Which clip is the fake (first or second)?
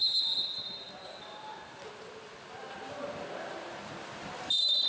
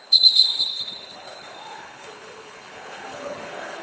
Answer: second